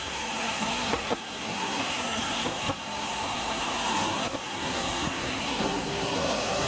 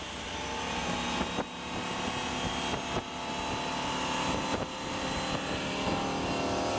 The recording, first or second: second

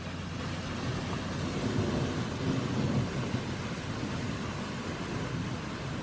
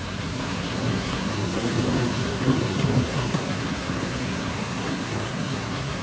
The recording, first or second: first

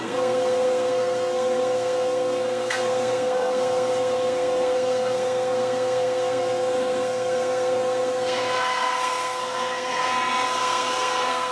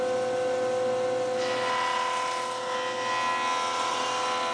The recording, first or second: second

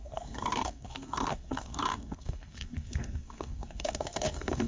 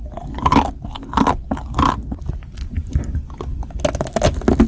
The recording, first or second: second